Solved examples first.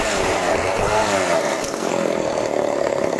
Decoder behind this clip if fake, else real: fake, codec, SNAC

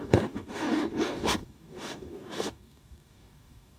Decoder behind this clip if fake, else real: fake, codec, DAC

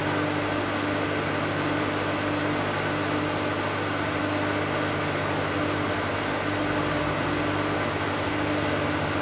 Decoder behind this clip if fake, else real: real